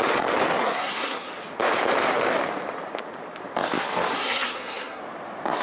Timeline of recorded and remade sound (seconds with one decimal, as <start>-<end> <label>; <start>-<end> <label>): 0.0-0.6 recorded; 0.6-1.3 remade; 1.3-4.1 recorded; 4.1-5.0 remade; 5.0-5.6 recorded

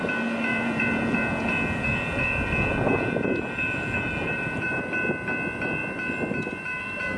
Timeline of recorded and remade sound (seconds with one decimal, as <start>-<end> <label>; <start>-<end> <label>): 0.0-0.5 recorded; 0.5-4.8 remade; 4.8-7.2 recorded

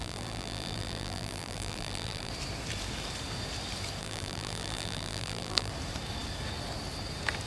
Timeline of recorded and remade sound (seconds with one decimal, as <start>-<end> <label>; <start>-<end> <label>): 0.0-2.3 remade; 2.3-4.0 recorded; 4.0-5.7 remade; 5.7-7.5 recorded